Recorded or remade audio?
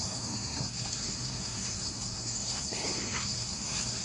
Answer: remade